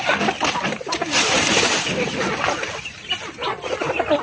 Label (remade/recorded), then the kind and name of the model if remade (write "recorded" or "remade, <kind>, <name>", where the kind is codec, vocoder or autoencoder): recorded